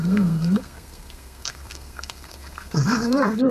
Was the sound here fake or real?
fake